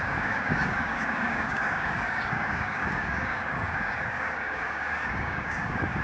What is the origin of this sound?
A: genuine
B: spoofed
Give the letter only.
B